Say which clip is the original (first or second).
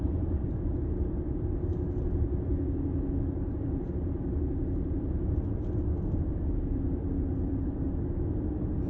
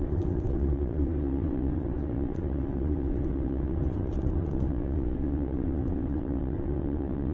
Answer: first